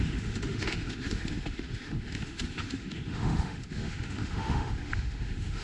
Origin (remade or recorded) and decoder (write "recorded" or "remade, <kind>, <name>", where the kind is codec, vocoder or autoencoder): remade, autoencoder, DAC-VAE